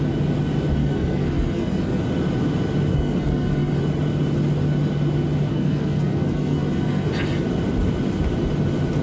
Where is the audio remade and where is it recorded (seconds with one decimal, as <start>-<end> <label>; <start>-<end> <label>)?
0.0-0.8 recorded; 0.8-2.0 remade; 2.0-2.9 recorded; 2.9-3.8 remade; 3.8-5.5 recorded; 5.5-7.1 remade; 7.1-9.0 recorded